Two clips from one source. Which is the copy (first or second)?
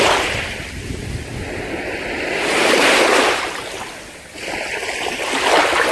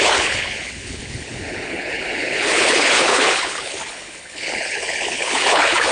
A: second